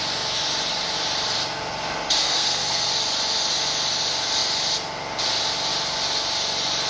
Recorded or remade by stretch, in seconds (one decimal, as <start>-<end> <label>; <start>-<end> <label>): 0.0-2.2 recorded; 2.2-2.9 remade; 2.9-6.9 recorded